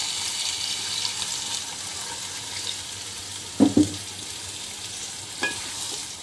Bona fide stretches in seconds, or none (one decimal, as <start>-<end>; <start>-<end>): 3.3-4.4